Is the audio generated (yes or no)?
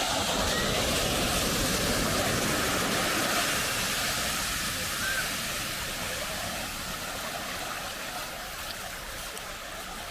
no